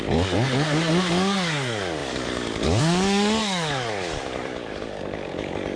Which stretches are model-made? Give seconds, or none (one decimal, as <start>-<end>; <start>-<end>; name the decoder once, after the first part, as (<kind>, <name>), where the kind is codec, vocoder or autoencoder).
0.0-5.8 (codec, DAC)